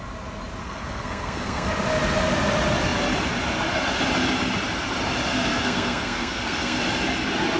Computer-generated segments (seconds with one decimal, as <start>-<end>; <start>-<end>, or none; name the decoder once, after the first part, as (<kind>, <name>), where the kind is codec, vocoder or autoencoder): 0.6-1.7 (codec, SNAC); 5.3-6.8